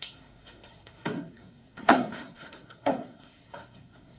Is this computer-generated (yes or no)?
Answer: yes